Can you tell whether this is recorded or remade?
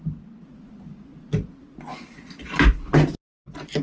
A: recorded